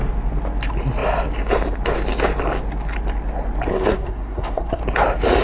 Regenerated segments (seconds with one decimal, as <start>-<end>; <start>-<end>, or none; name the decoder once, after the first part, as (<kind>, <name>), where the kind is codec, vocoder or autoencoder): 3.7-4.8 (codec, SNAC)